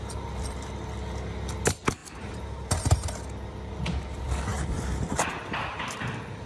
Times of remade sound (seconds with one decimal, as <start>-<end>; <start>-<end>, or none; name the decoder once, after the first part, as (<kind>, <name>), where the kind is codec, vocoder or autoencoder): 2.0-3.1 (vocoder, BigVGAN v2); 4.5-5.3

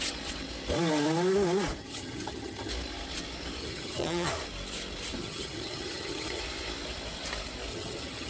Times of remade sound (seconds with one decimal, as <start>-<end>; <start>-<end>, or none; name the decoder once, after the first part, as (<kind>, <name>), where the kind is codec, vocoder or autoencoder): 1.8-2.7 (vocoder, HiFi-GAN); 3.6-4.3; 5.2-6.4; 7.7-8.3